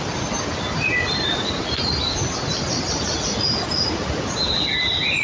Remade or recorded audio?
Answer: recorded